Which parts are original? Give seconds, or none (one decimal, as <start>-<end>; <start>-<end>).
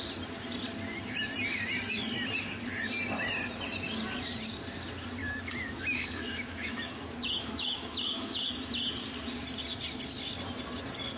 0.0-5.2; 8.5-11.2